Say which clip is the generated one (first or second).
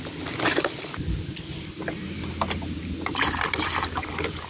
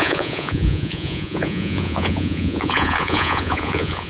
second